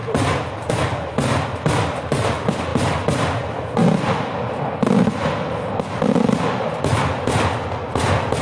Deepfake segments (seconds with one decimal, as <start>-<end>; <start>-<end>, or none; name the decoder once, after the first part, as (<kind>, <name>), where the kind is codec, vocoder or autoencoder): none